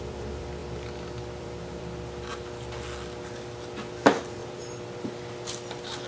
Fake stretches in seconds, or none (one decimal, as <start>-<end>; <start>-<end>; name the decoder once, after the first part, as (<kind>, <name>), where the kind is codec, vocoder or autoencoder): 0.0-2.3 (vocoder, BigVGAN v2); 3.8-4.4; 5.0-6.1